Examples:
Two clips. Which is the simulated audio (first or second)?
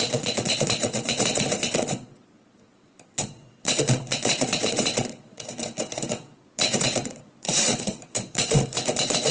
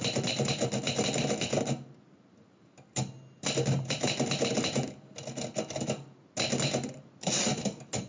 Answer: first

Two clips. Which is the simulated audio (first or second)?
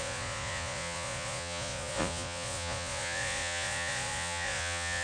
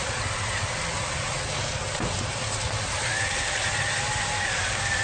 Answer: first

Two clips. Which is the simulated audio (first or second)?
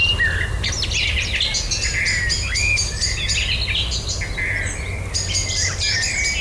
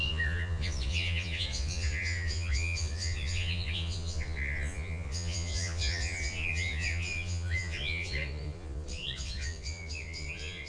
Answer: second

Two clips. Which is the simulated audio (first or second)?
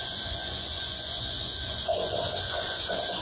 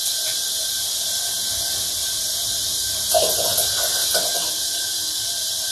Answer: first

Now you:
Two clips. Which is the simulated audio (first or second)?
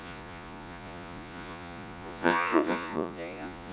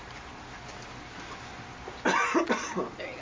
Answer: first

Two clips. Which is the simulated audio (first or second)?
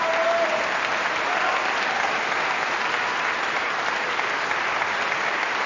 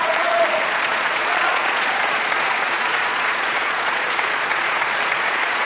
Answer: second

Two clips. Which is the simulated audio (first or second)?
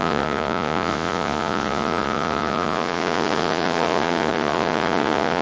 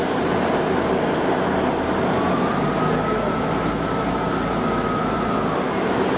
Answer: first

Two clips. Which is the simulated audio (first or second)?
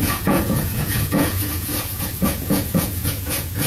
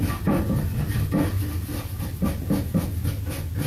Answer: first